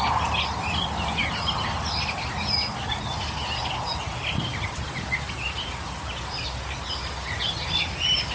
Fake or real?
real